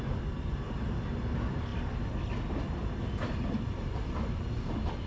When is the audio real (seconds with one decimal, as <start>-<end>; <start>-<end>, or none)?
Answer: 0.0-5.1